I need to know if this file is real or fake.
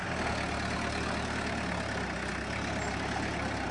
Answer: real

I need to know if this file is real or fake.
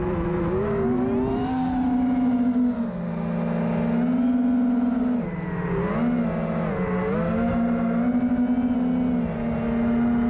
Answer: real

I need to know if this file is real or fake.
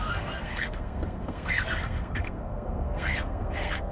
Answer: fake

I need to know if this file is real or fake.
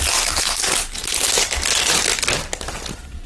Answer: real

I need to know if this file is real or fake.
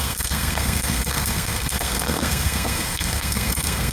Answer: fake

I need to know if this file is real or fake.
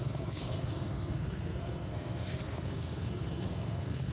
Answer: fake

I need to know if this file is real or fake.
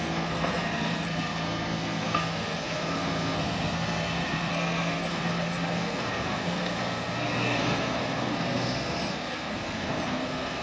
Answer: fake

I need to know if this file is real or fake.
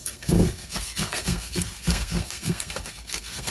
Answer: fake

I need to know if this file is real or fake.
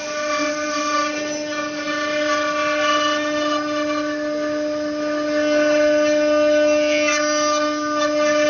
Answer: real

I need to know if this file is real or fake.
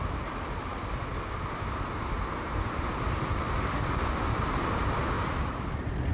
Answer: real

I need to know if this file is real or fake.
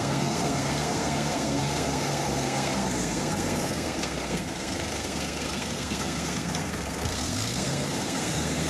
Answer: fake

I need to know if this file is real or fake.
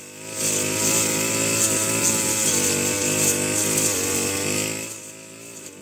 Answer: real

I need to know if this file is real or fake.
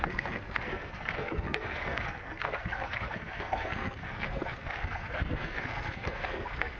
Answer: fake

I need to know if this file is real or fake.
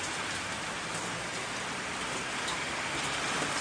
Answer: real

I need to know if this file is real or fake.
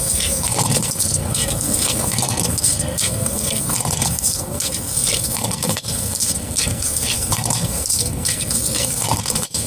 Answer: fake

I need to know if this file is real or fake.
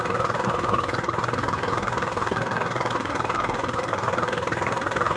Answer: fake